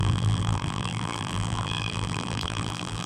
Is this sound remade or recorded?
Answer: remade